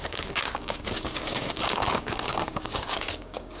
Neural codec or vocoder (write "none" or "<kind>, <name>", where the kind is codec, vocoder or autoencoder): codec, DAC